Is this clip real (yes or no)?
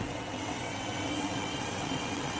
no